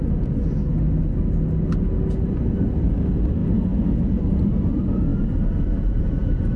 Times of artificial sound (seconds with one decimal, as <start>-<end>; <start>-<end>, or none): 2.3-3.4; 4.2-5.1; 5.9-6.6